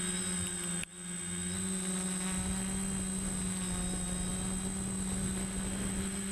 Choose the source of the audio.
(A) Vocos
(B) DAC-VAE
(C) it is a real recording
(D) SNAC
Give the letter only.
C